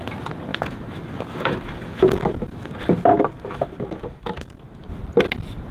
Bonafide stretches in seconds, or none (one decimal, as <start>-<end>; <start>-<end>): 0.0-0.5; 2.7-3.1; 4.9-5.7

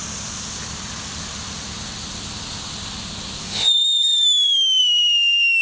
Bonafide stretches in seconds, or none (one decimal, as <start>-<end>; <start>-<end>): 0.0-3.4; 4.8-5.6

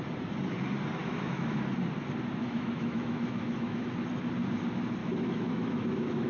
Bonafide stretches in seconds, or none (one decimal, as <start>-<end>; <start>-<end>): 0.0-1.0; 1.6-2.4; 3.9-5.0

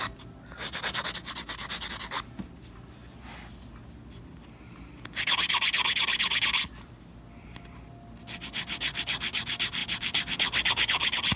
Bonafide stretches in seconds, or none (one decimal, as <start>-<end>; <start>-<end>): 0.0-11.4